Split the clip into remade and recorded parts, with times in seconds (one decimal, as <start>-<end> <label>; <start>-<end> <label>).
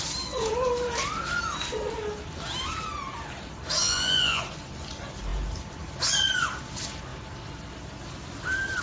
0.0-3.8 recorded; 3.8-4.4 remade; 4.4-8.8 recorded